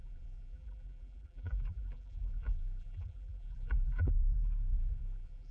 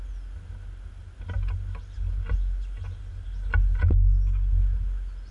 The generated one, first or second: first